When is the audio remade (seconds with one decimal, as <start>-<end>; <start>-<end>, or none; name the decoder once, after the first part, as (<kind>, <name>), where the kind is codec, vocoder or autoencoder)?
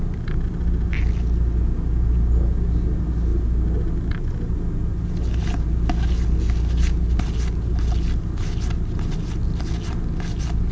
none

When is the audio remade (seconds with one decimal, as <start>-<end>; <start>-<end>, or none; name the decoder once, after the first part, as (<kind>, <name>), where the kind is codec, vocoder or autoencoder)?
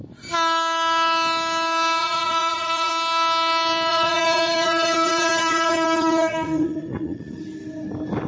2.0-2.9 (vocoder, Vocos); 3.9-7.4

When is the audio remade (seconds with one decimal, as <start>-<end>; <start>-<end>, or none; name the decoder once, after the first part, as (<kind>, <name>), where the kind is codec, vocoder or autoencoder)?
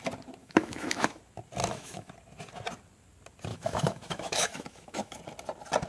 0.4-1.2 (autoencoder, DAC-VAE); 1.6-2.1; 3.5-5.2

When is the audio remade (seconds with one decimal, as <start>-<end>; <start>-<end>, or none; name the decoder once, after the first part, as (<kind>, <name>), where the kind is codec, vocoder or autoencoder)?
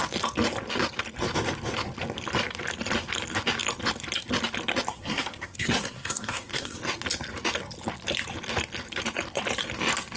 4.9-6.8 (codec, SNAC)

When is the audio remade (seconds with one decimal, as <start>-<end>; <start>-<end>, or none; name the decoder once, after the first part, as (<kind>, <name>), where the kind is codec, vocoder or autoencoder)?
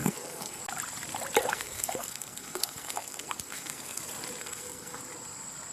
0.0-0.6 (codec, SNAC); 1.4-4.0; 4.4-5.0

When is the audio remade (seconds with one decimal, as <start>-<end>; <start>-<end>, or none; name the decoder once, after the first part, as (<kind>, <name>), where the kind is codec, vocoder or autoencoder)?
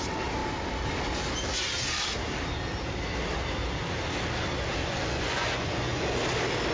4.8-6.2 (vocoder, Vocos)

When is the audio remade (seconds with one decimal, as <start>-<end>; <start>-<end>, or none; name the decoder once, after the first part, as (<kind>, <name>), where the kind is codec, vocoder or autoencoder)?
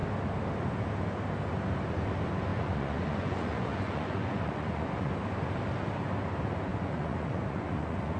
2.5-5.1 (vocoder, Vocos); 6.7-8.2